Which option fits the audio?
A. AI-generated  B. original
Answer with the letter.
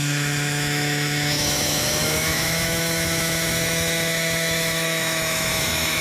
A